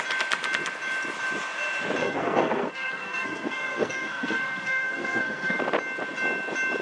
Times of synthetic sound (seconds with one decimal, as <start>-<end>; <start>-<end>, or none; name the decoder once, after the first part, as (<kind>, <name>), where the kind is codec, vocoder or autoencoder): 2.0-5.6 (codec, SNAC)